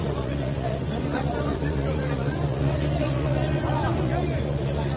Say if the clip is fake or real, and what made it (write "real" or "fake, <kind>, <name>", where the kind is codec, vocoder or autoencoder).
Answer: fake, vocoder, Vocos